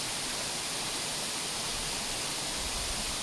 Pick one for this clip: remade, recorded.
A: recorded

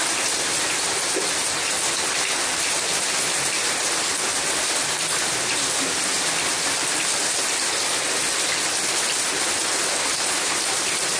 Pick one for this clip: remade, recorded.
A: recorded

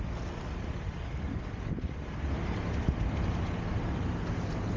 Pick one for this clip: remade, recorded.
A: recorded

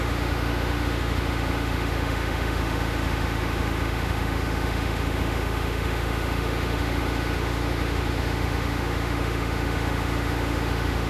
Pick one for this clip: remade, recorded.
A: remade